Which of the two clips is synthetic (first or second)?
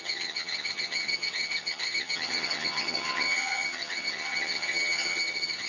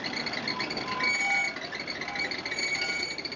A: first